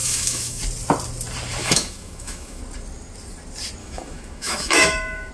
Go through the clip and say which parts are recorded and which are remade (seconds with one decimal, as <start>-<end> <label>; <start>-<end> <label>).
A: 0.0-0.6 remade; 0.6-1.6 recorded; 1.6-2.6 remade; 2.6-3.8 recorded; 3.8-5.3 remade